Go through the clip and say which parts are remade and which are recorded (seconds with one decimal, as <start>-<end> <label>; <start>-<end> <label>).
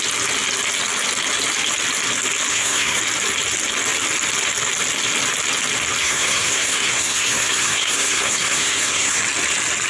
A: 0.0-2.5 recorded; 2.5-3.0 remade; 3.0-6.0 recorded; 6.0-9.2 remade; 9.2-9.9 recorded